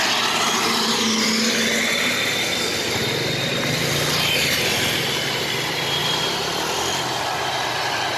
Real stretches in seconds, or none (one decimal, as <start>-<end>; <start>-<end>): 0.0-8.2